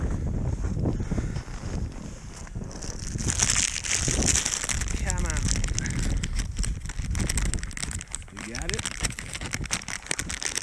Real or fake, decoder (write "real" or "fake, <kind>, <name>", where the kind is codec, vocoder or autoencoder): real